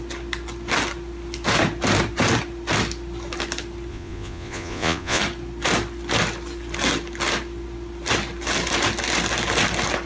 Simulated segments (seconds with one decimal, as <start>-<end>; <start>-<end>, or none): 3.9-5.2